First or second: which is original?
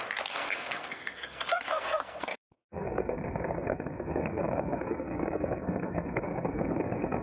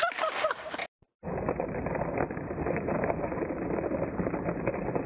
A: second